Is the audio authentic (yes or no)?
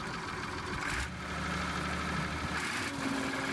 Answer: yes